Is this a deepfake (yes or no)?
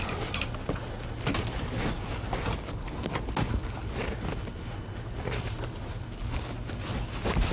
no